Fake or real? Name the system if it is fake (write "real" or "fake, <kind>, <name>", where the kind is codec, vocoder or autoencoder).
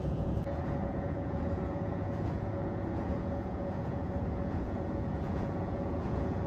fake, vocoder, Vocos